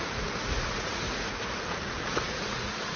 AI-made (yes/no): yes